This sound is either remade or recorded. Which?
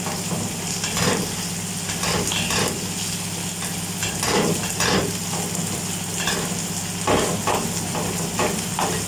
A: recorded